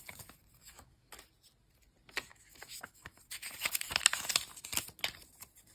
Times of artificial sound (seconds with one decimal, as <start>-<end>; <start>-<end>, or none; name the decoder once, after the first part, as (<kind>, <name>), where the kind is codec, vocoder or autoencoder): 0.6-1.1 (autoencoder, DAC-VAE); 2.3-3.2